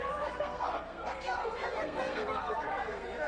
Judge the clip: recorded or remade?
remade